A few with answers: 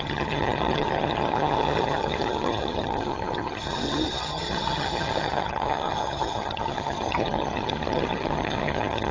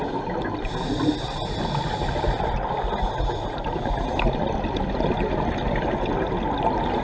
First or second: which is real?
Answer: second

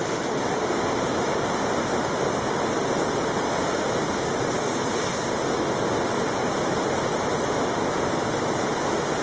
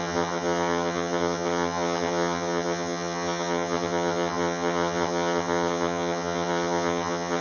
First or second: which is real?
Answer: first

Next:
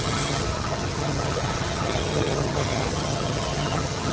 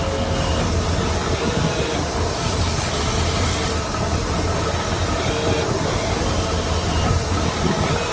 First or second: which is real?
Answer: second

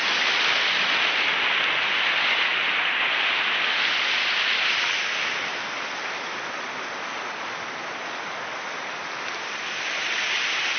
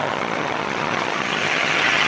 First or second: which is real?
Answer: first